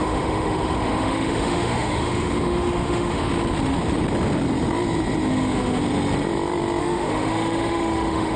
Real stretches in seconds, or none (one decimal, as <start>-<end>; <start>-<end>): 3.3-5.3; 5.8-6.8